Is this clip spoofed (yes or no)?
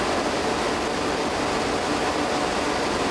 no